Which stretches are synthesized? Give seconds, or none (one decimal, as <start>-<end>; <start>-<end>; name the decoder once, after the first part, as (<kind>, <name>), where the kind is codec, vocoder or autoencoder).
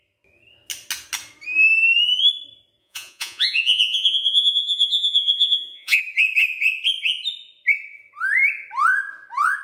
2.8-6.0 (vocoder, Vocos)